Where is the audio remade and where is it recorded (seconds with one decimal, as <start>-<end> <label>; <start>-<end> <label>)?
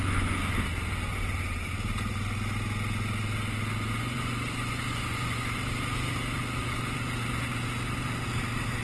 0.0-0.4 remade; 0.4-4.0 recorded; 4.0-5.6 remade; 5.6-8.8 recorded